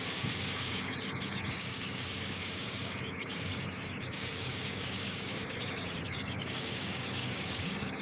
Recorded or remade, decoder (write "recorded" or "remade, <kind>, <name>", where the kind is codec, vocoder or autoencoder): remade, codec, DAC